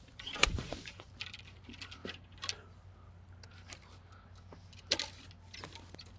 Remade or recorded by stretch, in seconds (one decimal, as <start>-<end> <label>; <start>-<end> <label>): 0.0-0.4 recorded; 0.4-1.1 remade; 1.1-6.2 recorded